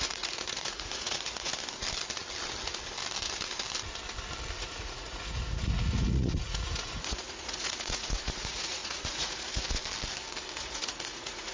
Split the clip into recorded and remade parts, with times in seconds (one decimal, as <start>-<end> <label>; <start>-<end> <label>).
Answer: 0.0-1.5 remade; 1.5-4.6 recorded; 4.6-9.8 remade; 9.8-10.6 recorded; 10.6-11.5 remade